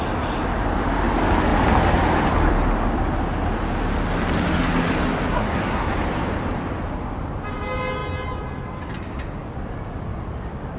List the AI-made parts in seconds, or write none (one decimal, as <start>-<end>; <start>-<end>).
5.3-5.9